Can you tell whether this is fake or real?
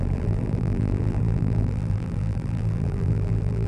fake